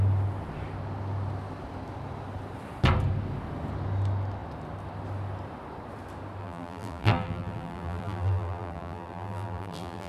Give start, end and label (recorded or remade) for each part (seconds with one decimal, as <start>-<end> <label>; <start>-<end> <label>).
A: 0.0-6.4 recorded; 6.4-10.1 remade